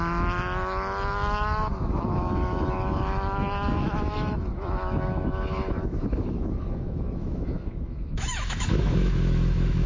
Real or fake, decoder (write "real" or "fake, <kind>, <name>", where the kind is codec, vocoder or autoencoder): fake, autoencoder, DAC-VAE